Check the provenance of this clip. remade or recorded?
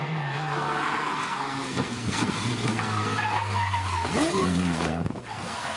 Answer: remade